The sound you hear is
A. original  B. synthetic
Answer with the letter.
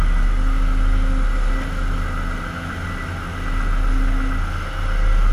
A